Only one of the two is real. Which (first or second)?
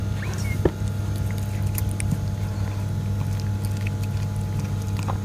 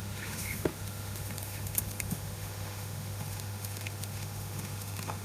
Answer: first